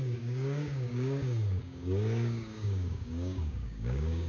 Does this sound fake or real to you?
fake